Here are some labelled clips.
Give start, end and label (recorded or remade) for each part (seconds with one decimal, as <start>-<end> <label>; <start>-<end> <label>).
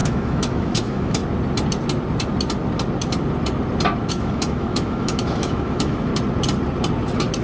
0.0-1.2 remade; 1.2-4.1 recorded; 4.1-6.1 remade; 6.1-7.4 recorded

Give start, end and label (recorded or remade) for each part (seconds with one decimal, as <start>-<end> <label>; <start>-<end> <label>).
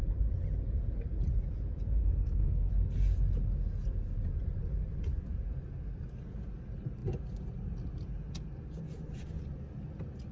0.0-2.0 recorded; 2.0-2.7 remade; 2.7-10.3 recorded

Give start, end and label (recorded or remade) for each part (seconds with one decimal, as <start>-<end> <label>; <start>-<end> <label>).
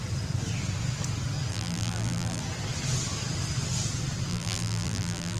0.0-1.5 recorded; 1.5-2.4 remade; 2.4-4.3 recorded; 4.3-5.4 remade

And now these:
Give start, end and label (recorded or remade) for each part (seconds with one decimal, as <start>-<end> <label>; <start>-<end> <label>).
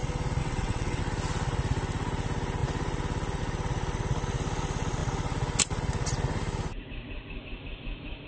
0.0-0.4 recorded; 0.4-1.0 remade; 1.0-8.3 recorded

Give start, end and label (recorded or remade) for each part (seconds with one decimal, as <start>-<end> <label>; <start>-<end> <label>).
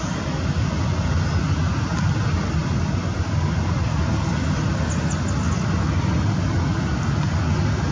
0.0-7.9 recorded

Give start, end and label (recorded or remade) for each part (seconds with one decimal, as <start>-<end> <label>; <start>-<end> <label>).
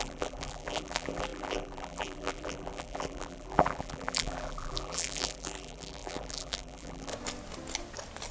0.0-7.1 remade; 7.1-8.3 recorded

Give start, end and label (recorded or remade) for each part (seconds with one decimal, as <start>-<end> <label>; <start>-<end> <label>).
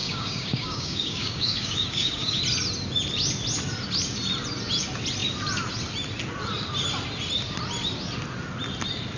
0.0-2.4 remade; 2.4-9.2 recorded